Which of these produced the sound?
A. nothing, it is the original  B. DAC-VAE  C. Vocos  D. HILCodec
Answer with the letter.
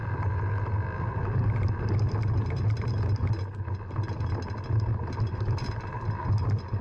A